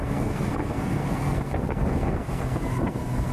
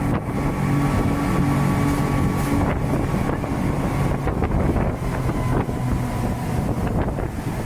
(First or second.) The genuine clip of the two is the second